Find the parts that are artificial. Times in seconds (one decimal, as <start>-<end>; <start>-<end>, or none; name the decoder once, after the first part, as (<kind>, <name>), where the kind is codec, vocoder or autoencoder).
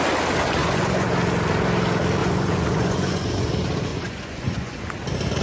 0.6-1.1 (vocoder, Vocos); 2.2-3.5; 3.9-4.8